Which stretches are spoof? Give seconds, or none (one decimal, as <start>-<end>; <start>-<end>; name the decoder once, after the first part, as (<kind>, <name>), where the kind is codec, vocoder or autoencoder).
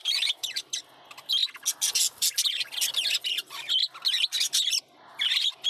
0.0-0.7 (vocoder, BigVGAN v2)